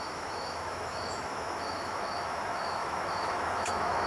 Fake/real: fake